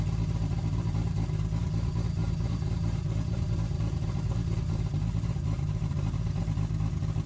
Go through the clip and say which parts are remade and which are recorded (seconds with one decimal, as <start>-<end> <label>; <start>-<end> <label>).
0.0-2.2 recorded; 2.2-6.4 remade; 6.4-7.3 recorded

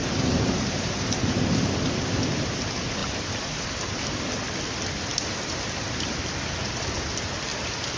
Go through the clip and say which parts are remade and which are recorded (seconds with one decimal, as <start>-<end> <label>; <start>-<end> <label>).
0.0-1.7 remade; 1.7-3.0 recorded; 3.0-4.0 remade; 4.0-8.0 recorded

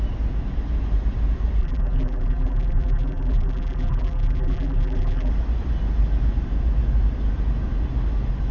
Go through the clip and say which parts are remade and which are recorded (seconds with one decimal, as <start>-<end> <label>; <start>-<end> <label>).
0.0-1.6 recorded; 1.6-5.3 remade; 5.3-8.5 recorded

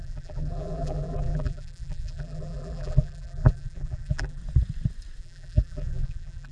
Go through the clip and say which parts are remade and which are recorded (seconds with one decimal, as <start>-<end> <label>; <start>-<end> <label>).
0.0-4.4 remade; 4.4-5.2 recorded; 5.2-6.5 remade